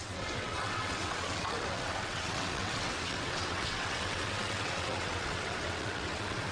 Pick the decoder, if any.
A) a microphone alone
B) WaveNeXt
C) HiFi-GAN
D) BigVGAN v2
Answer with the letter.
B